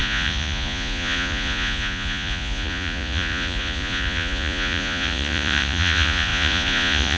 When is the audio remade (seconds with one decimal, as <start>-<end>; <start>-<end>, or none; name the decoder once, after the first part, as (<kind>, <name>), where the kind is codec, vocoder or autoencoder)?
0.0-7.2 (vocoder, Vocos)